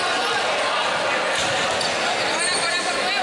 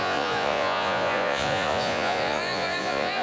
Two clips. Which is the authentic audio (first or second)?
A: first